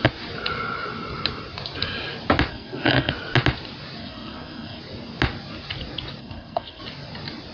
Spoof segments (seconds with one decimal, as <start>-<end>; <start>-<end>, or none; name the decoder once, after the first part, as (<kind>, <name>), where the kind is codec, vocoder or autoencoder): 2.5-3.1 (codec, SNAC); 4.0-4.8; 6.2-6.8